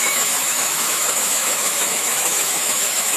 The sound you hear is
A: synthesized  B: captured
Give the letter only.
A